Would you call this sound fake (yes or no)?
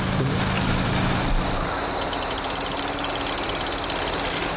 no